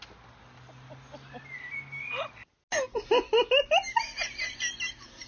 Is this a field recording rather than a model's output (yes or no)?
yes